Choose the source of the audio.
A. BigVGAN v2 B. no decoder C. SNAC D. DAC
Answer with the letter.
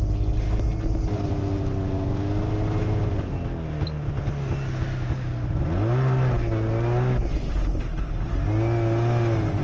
B